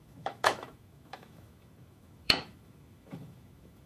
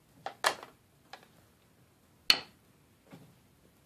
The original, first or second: second